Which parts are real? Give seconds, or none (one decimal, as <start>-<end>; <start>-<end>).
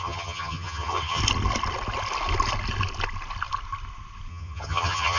1.2-4.3